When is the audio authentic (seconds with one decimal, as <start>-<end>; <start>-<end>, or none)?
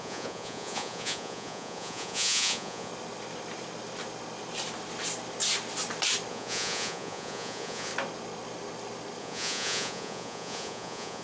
2.9-6.3; 7.9-9.2